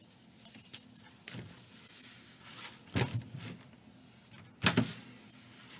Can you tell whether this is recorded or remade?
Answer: recorded